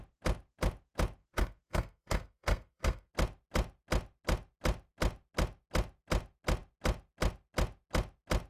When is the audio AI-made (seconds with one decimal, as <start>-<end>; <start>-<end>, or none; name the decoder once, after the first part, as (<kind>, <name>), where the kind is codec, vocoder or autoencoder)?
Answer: 1.2-3.1 (codec, SNAC)

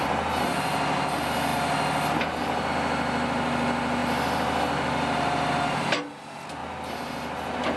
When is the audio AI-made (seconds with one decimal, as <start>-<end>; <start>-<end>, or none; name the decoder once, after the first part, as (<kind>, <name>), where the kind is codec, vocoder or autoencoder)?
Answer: none

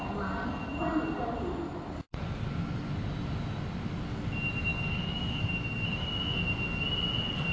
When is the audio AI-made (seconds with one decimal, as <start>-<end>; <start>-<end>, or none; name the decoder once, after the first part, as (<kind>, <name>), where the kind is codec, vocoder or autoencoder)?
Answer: 4.7-6.1 (autoencoder, DAC-VAE)

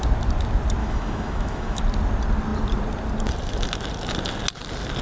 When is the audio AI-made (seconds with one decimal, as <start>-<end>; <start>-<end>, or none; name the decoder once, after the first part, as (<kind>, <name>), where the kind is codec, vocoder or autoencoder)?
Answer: 0.8-1.8 (autoencoder, DAC-VAE)